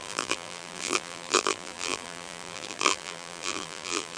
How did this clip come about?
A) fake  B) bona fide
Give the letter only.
A